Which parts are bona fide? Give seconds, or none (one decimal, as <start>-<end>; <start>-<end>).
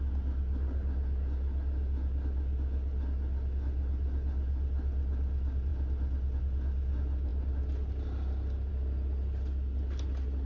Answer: 0.0-10.5